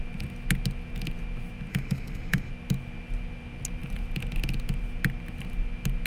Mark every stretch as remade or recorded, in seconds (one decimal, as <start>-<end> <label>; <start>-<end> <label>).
0.0-1.7 recorded; 1.7-2.5 remade; 2.5-6.1 recorded